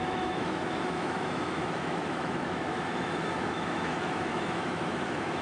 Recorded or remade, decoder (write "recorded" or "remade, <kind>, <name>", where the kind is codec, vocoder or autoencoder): remade, autoencoder, DAC-VAE